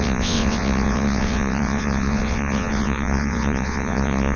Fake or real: fake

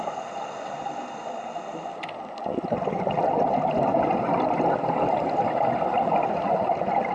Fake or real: real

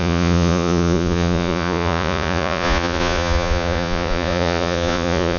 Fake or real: fake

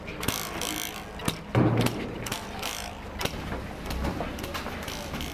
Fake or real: real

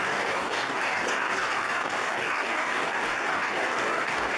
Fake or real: fake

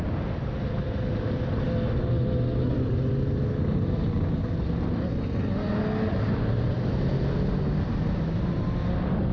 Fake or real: real